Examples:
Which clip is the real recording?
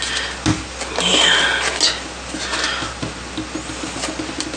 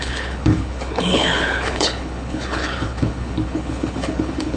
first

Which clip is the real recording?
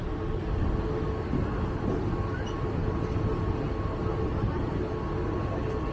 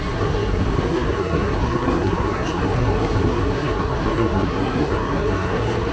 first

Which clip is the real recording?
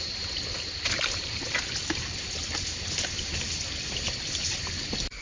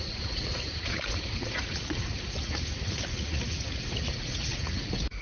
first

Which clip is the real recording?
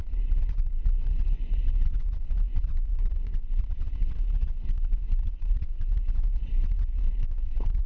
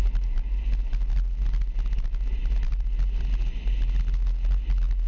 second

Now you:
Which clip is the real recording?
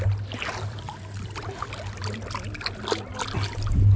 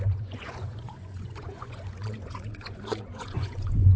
first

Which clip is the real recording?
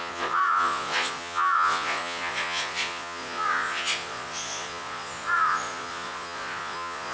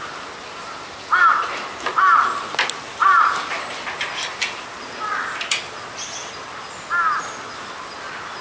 second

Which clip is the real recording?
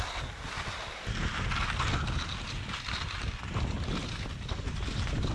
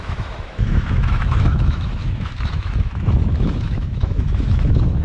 first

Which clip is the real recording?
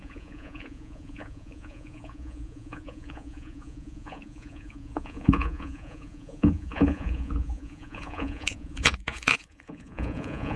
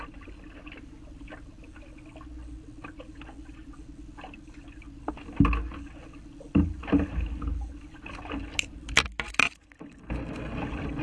second